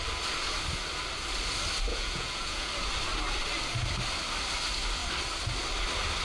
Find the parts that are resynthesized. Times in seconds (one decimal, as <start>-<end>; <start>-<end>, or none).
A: 1.9-2.7